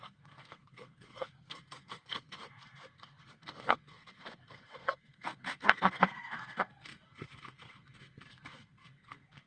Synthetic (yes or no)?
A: yes